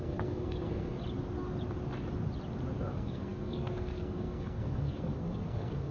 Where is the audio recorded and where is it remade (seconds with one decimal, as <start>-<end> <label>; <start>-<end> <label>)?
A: 0.0-1.0 remade; 1.0-2.8 recorded; 2.8-5.9 remade